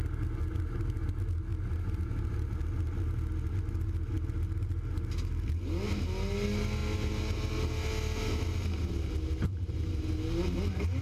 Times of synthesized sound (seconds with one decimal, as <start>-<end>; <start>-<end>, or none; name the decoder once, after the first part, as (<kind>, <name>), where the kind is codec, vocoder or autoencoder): none